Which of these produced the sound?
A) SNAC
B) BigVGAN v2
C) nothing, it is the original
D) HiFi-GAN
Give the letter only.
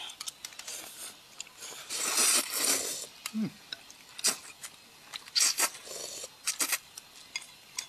C